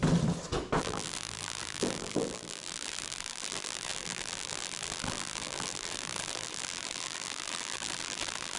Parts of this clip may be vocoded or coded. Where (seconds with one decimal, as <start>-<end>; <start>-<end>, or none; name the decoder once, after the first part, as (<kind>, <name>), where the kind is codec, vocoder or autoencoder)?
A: 0.8-8.6 (vocoder, BigVGAN v2)